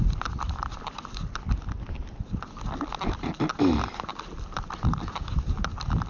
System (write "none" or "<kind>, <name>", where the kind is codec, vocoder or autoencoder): none